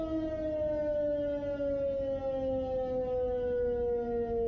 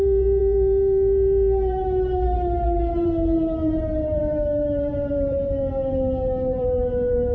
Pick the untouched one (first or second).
first